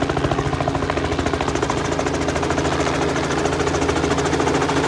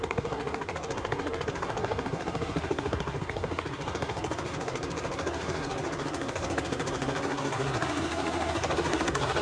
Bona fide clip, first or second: first